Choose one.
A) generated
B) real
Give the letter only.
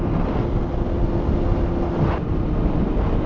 B